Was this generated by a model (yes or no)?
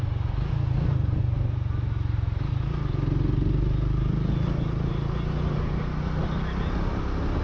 no